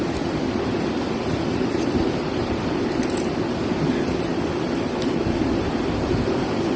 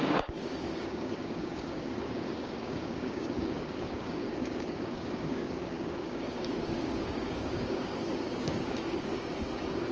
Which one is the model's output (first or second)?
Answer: second